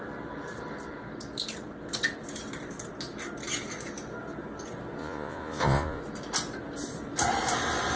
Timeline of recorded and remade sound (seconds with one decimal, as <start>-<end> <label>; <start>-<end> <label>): 0.0-5.0 recorded; 5.0-6.0 remade; 6.0-8.0 recorded